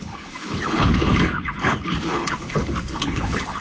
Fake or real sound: fake